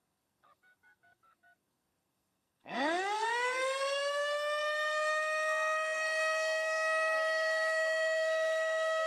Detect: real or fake fake